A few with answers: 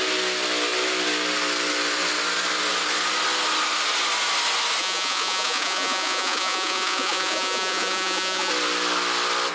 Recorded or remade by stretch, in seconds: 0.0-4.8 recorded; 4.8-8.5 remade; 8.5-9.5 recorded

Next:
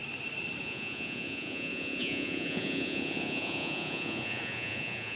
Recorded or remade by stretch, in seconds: 0.0-0.6 recorded; 0.6-5.2 remade

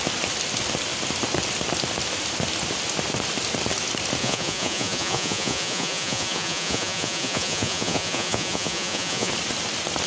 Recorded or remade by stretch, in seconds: 0.0-4.2 recorded; 4.2-9.3 remade; 9.3-10.1 recorded

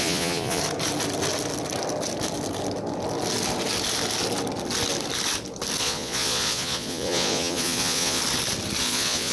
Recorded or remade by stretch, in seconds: 0.0-0.6 remade; 0.6-5.8 recorded; 5.8-8.2 remade; 8.2-8.8 recorded; 8.8-9.3 remade

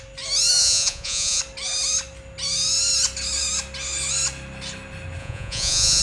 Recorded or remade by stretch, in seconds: 0.0-0.6 recorded; 0.6-1.4 remade; 1.4-5.2 recorded; 5.2-6.0 remade

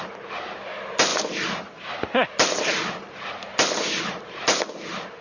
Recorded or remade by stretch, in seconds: 0.0-5.2 recorded

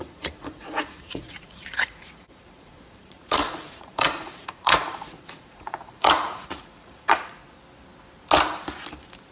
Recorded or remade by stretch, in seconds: 0.0-7.4 remade; 7.4-9.3 recorded

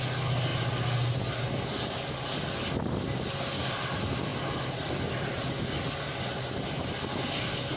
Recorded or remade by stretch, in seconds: 0.0-7.8 recorded